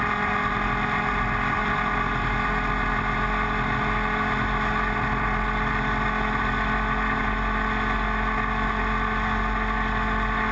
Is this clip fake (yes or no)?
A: no